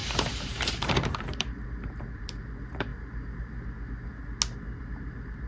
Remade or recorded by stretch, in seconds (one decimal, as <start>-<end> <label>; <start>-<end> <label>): 0.0-2.9 remade; 2.9-4.8 recorded; 4.8-5.5 remade